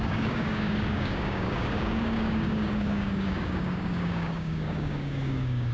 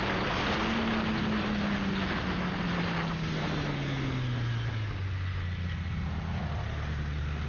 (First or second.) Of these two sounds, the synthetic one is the first